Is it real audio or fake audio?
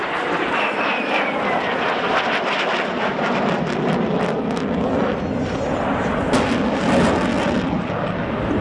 real